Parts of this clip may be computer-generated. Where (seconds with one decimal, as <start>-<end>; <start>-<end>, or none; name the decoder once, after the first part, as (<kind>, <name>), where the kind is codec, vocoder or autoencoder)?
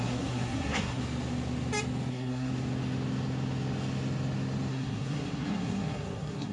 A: 0.0-1.0 (codec, SNAC); 2.1-2.5; 4.7-6.5